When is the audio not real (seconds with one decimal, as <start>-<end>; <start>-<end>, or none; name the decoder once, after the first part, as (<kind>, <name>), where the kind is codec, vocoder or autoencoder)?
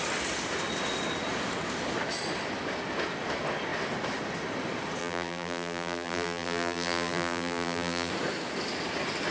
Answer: 5.0-8.1 (vocoder, BigVGAN v2)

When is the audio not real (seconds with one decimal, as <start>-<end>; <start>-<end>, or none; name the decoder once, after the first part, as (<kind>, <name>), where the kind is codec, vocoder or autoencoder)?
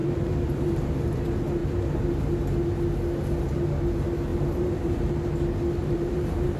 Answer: 0.0-0.8 (vocoder, BigVGAN v2); 4.3-5.1; 5.8-6.6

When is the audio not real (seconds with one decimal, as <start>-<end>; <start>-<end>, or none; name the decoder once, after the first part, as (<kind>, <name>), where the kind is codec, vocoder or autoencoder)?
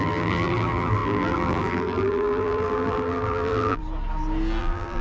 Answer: 0.0-3.8 (vocoder, BigVGAN v2); 4.6-5.0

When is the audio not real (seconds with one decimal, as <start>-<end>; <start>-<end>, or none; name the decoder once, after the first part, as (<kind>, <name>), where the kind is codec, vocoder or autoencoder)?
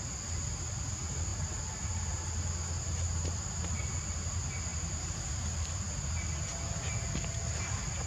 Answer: 1.3-3.4 (vocoder, BigVGAN v2); 4.7-5.8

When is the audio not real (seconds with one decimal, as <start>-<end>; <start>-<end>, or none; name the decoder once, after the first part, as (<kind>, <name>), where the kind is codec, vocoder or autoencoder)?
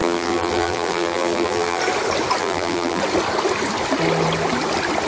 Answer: 0.0-1.8 (vocoder, BigVGAN v2); 2.4-3.0